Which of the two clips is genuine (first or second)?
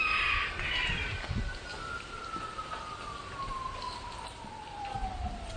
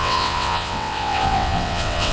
first